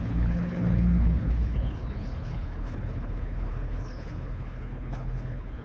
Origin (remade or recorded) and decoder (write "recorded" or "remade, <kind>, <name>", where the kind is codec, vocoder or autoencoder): remade, codec, HILCodec